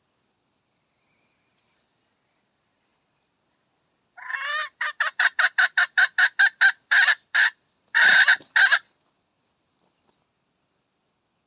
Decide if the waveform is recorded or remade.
recorded